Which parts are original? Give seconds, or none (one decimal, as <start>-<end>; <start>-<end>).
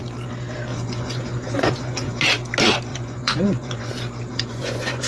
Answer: 0.0-0.7; 2.2-2.9; 3.9-4.3